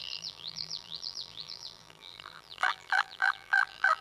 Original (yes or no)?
no